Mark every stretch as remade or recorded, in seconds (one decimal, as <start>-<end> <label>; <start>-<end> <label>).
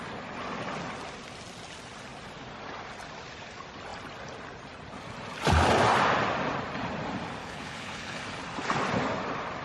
0.0-7.4 recorded; 7.4-8.2 remade; 8.2-9.6 recorded